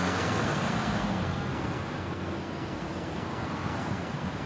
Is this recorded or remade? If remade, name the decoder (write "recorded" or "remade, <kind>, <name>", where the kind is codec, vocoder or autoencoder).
remade, codec, SNAC